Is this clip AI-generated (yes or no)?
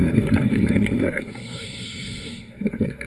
yes